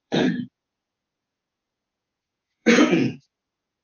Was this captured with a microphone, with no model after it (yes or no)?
no